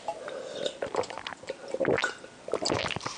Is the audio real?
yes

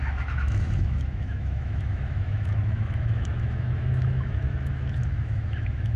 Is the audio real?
no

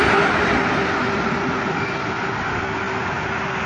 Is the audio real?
yes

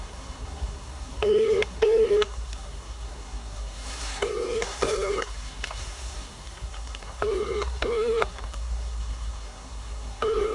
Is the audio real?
no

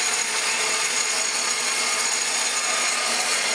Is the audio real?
no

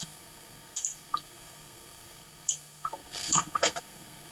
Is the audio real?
no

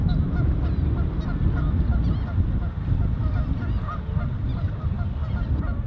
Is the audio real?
yes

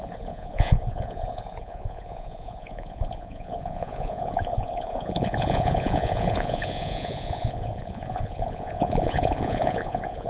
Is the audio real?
no